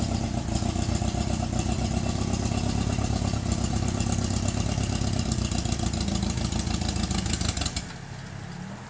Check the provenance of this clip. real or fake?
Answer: real